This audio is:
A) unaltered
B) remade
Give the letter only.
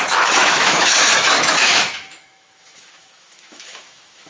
B